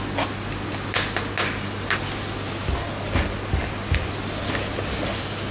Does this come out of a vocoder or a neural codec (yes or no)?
no